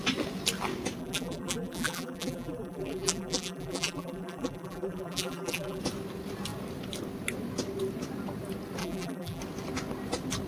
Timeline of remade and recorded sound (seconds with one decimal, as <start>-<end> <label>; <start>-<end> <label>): 0.0-1.0 recorded; 1.0-5.8 remade; 5.8-8.8 recorded; 8.8-9.4 remade; 9.4-10.5 recorded